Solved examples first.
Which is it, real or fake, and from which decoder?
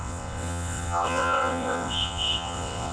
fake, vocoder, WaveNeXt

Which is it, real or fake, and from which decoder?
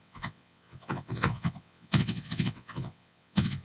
fake, vocoder, WaveNeXt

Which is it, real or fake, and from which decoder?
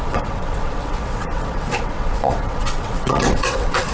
fake, vocoder, WaveNeXt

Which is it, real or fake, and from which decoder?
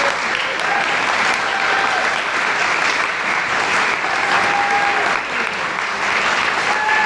real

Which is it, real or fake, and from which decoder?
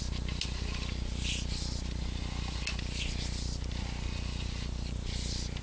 real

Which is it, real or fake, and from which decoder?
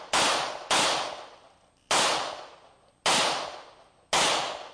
real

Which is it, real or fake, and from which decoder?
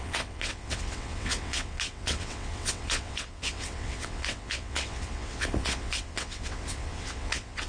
fake, vocoder, WaveNeXt